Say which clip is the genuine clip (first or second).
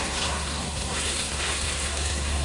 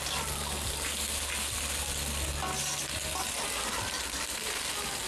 second